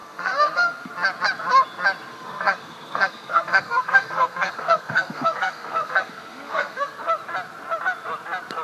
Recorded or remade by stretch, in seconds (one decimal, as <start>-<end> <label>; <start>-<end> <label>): 0.0-0.9 remade; 0.9-2.1 recorded; 2.1-7.0 remade; 7.0-8.6 recorded